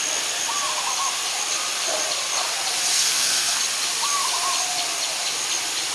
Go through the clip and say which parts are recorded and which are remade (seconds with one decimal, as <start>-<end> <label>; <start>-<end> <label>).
0.0-2.9 recorded; 2.9-3.6 remade; 3.6-5.9 recorded